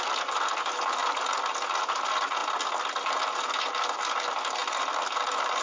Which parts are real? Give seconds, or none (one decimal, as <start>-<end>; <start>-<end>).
0.0-2.4; 3.6-4.6